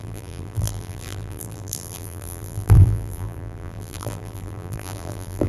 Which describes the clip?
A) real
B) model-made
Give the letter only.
B